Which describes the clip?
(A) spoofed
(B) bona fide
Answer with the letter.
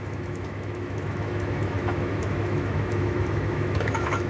A